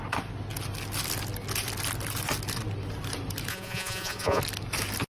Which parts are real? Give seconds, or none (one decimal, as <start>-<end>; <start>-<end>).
0.0-3.5; 4.4-5.1